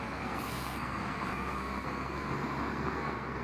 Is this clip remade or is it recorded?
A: remade